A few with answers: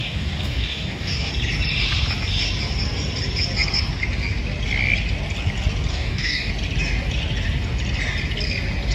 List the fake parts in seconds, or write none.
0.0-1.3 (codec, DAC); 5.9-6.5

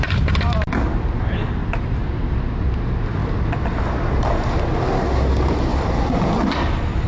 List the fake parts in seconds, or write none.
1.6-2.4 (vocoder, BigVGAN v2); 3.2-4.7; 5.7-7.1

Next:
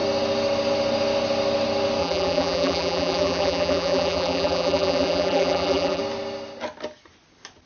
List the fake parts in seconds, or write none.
2.0-6.0 (vocoder, BigVGAN v2)